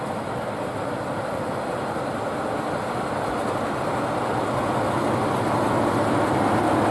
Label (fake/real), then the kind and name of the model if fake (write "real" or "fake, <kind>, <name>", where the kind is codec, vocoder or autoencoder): real